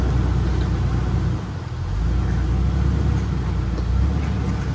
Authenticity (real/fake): real